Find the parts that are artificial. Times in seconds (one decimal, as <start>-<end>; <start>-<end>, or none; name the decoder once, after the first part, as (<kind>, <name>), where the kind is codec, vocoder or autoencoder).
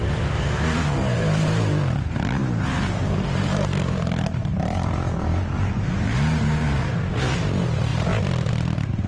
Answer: 0.0-9.1 (vocoder, BigVGAN v2)